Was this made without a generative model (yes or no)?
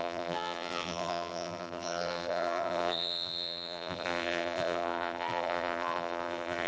no